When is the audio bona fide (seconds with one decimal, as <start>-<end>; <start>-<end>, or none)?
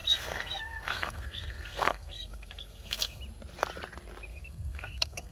3.2-4.3